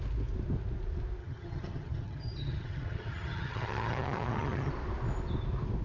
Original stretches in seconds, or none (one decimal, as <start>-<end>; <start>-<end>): 0.0-1.2; 4.7-5.8